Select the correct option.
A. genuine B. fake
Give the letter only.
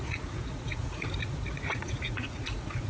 B